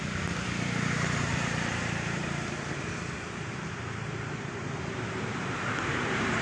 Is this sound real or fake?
fake